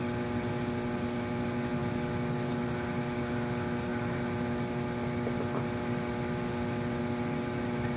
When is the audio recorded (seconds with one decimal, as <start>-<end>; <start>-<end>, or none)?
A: 0.0-8.0